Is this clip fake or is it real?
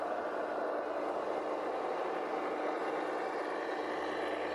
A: real